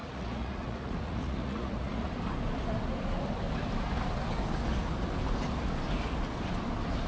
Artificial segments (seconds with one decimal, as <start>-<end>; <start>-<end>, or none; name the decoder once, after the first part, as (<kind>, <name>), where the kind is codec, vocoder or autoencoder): 0.0-2.1 (vocoder, Vocos)